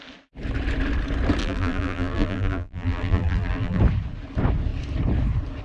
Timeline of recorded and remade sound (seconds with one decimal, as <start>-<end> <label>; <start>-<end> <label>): 0.0-1.4 recorded; 1.4-3.8 remade; 3.8-5.6 recorded